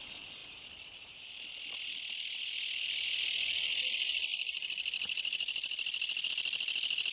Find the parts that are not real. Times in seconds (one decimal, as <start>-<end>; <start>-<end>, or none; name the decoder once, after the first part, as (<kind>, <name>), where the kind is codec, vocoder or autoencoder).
none